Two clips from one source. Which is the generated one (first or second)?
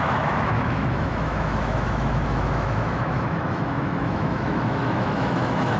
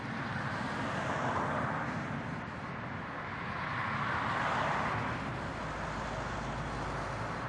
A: first